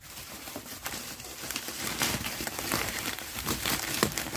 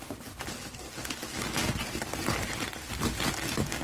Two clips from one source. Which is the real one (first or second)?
second